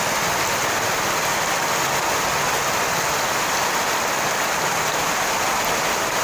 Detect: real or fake real